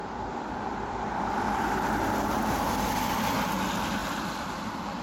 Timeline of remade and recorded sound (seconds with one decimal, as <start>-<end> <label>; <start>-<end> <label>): 0.0-3.0 remade; 3.0-4.0 recorded; 4.0-5.0 remade